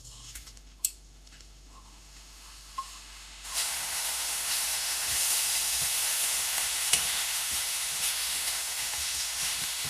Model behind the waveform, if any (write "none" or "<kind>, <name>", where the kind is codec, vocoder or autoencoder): autoencoder, DAC-VAE